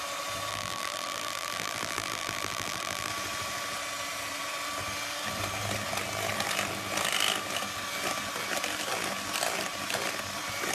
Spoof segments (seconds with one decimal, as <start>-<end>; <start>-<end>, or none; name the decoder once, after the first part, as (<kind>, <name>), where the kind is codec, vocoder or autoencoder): 0.5-3.1 (vocoder, BigVGAN v2)